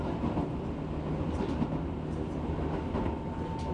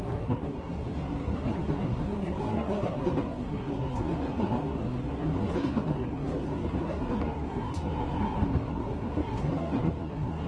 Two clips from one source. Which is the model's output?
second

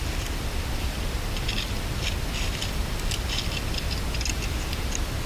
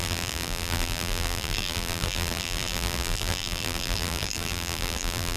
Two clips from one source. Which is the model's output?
second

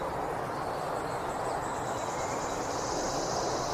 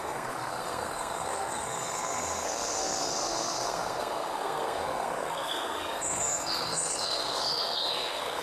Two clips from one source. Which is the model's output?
second